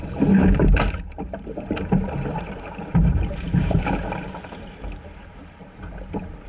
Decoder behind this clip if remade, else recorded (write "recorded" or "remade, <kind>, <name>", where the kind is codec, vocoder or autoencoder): remade, vocoder, BigVGAN v2